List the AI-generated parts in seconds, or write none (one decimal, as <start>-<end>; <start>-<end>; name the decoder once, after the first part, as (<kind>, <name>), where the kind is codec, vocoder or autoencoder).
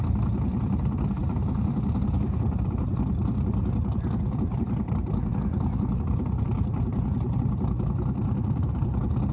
0.0-9.3 (vocoder, BigVGAN v2)